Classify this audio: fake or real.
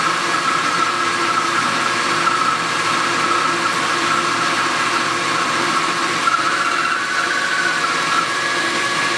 fake